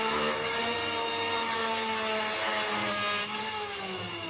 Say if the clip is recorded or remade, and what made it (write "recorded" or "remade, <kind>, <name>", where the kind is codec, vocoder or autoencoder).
recorded